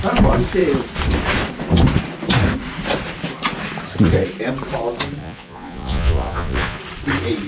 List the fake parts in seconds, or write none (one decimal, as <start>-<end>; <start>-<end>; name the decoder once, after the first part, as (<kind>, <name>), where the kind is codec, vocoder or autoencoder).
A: 5.2-6.8 (vocoder, Vocos)